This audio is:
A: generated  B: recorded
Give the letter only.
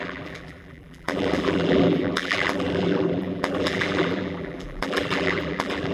A